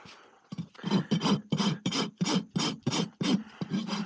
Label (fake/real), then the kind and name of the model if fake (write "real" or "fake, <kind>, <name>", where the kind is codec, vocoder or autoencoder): real